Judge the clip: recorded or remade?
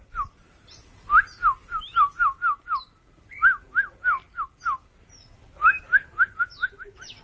recorded